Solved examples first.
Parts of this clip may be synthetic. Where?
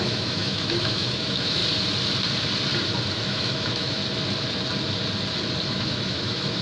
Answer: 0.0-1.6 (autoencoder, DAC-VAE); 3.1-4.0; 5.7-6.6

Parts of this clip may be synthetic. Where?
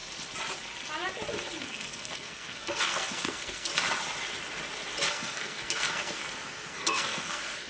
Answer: 1.6-3.7 (codec, SNAC); 5.1-7.7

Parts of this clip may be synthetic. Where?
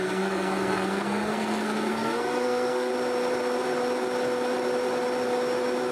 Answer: 0.0-2.9 (codec, SNAC)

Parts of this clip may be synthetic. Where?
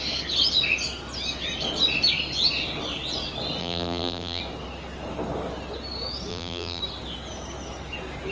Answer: 3.6-4.4 (vocoder, BigVGAN v2); 6.3-6.8